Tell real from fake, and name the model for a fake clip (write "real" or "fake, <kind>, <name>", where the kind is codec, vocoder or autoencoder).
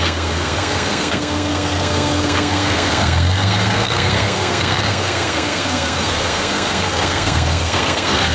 fake, codec, SNAC